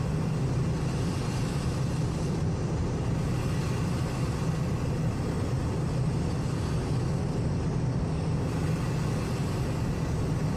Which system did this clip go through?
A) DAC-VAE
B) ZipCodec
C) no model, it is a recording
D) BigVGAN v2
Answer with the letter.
C